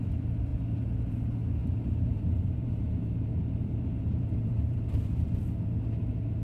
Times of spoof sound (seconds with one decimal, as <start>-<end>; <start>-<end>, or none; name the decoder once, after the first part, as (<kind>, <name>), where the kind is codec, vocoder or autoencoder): 1.6-5.4 (vocoder, BigVGAN v2)